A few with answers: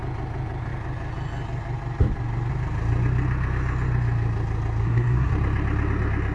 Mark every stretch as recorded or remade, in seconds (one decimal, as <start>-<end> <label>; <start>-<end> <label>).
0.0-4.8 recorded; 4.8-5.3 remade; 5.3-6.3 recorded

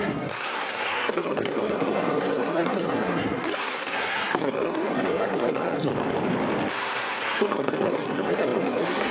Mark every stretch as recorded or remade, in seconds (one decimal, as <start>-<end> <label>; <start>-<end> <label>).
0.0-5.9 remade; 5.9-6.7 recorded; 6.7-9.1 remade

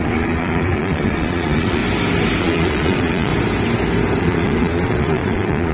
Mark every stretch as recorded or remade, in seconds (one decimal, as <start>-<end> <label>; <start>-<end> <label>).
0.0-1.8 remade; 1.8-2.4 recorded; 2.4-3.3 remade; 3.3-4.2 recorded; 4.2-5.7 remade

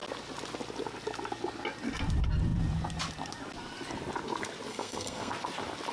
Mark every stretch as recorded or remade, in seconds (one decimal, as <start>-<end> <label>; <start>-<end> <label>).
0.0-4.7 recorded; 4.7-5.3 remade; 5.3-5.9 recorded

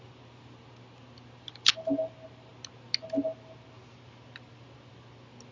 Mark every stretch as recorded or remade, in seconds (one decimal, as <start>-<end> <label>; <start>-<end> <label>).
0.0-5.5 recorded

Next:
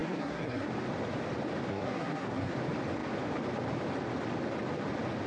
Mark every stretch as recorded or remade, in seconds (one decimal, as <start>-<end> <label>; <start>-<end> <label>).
0.0-0.7 remade; 0.7-1.7 recorded; 1.7-2.5 remade; 2.5-5.3 recorded

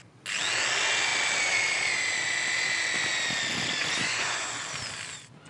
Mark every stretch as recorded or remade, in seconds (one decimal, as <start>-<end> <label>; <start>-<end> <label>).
0.0-3.8 recorded; 3.8-4.6 remade; 4.6-5.5 recorded

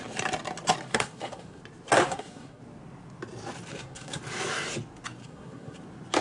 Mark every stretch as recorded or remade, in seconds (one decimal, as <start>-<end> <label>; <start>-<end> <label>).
0.0-0.9 recorded; 0.9-1.6 remade; 1.6-2.0 recorded; 2.0-2.6 remade; 2.6-3.7 recorded; 3.7-4.2 remade; 4.2-5.2 recorded; 5.2-5.8 remade; 5.8-6.2 recorded